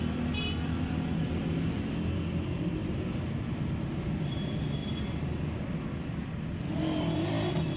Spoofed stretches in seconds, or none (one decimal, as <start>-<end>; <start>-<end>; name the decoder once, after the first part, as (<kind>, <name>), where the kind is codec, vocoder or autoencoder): none